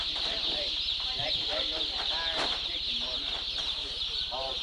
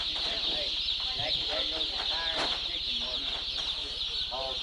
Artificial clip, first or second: first